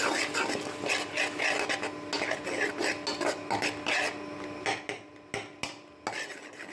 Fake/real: real